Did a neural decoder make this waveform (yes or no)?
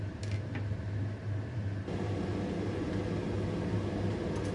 no